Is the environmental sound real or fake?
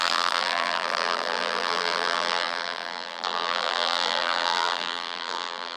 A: fake